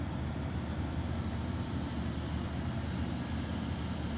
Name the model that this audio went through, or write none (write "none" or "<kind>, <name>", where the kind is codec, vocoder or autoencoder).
none